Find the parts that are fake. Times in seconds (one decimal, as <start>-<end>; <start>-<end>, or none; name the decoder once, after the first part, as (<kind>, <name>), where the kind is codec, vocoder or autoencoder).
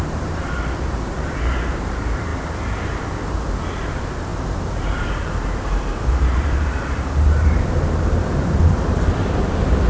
0.0-2.3 (vocoder, BigVGAN v2); 3.7-9.9